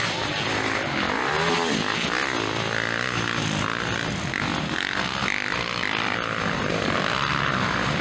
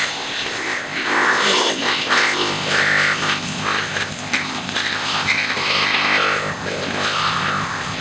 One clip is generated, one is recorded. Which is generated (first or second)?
second